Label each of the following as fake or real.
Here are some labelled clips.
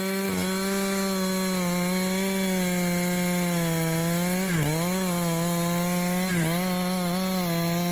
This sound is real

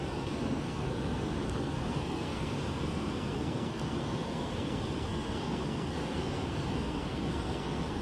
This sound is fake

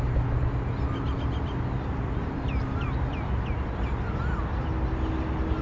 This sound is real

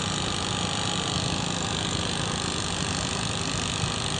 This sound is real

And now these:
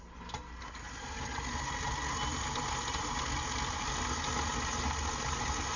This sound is real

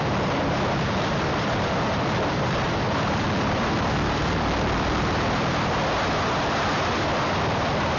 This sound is fake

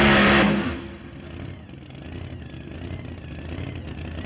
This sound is real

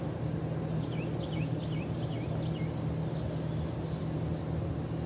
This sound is real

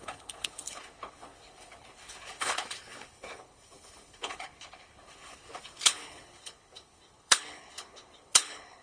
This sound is fake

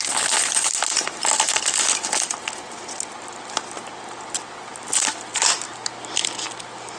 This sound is real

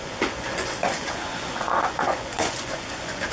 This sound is fake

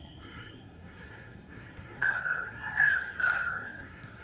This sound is fake